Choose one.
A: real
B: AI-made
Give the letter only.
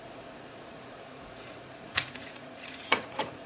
B